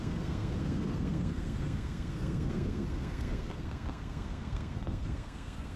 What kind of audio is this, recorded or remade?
remade